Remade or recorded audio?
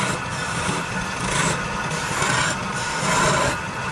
recorded